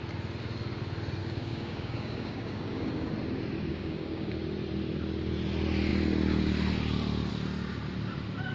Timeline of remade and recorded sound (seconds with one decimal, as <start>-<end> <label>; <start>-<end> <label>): 0.0-1.2 recorded; 1.2-3.1 remade; 3.1-3.7 recorded; 3.7-4.3 remade; 4.3-8.5 recorded